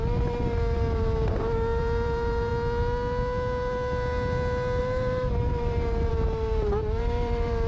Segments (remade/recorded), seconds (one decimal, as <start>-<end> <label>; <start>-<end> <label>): 0.0-2.5 remade; 2.5-4.8 recorded; 4.8-7.7 remade